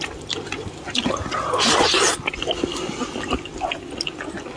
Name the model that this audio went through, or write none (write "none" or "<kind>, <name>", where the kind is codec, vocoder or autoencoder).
none